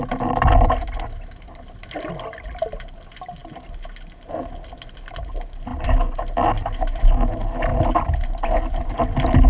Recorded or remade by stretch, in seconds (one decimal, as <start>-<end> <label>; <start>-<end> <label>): 0.0-9.5 recorded